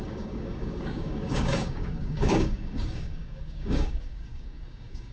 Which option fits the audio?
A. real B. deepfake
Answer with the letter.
B